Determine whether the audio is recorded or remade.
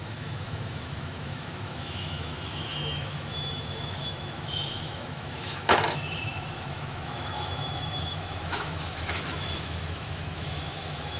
remade